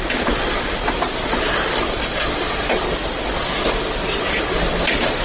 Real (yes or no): yes